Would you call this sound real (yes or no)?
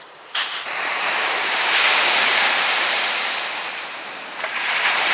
no